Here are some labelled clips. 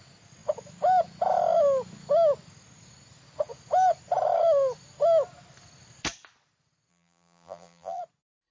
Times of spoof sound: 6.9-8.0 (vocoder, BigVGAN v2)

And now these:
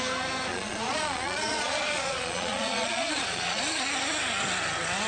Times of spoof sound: 0.5-3.6 (vocoder, Vocos)

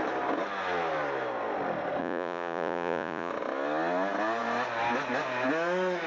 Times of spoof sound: 2.0-3.3 (vocoder, Vocos)

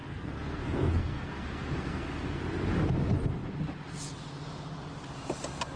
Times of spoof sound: 0.0-2.4 (codec, SNAC)